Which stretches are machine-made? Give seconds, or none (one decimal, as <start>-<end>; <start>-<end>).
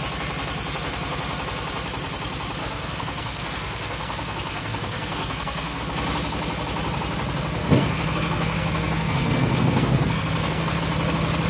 2.6-5.8; 7.6-10.8